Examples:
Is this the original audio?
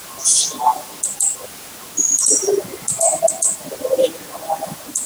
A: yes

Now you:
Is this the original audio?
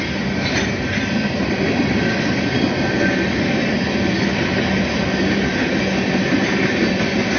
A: yes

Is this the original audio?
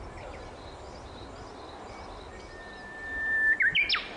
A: yes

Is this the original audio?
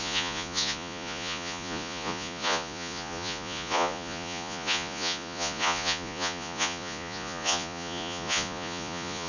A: no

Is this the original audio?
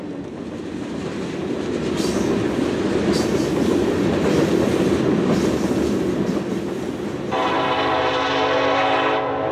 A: yes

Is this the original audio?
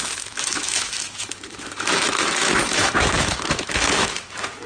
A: no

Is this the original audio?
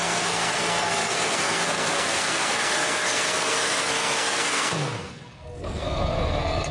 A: no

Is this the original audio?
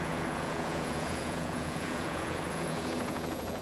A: no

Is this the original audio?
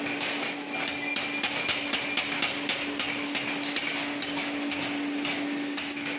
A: yes